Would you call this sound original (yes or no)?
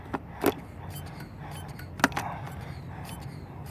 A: yes